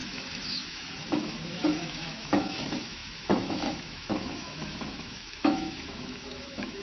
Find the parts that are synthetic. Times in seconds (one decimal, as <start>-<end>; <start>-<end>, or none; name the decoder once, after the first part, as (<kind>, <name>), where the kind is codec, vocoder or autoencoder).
0.0-6.8 (autoencoder, DAC-VAE)